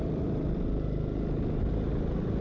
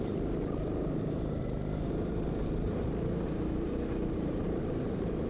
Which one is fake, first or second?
second